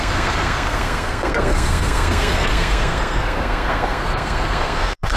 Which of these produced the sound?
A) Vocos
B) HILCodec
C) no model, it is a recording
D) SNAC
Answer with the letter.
D